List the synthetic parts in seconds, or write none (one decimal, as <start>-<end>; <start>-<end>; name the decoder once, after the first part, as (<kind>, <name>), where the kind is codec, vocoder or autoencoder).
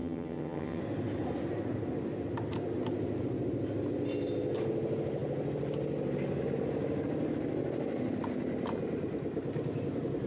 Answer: 0.0-0.8 (vocoder, HiFi-GAN)